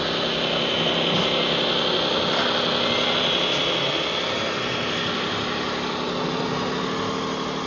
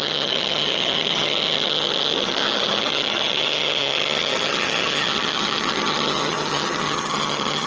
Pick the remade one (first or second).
second